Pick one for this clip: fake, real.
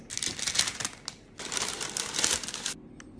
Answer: real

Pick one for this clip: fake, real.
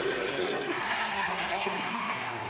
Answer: fake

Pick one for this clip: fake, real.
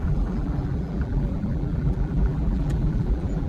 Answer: fake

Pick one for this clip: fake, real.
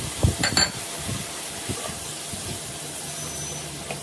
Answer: fake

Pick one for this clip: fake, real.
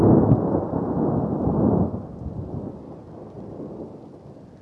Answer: real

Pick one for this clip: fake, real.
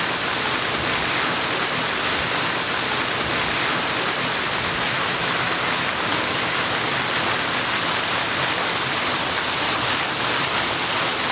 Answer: real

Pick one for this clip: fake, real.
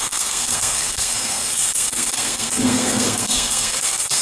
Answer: fake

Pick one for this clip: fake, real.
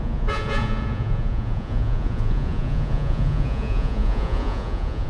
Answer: fake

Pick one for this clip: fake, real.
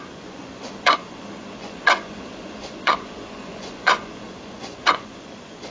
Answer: fake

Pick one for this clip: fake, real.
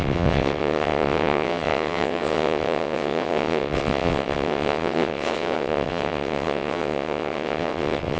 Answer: fake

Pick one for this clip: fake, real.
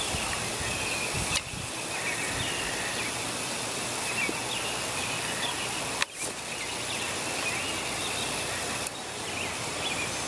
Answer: real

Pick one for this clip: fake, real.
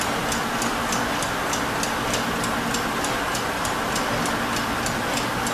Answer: real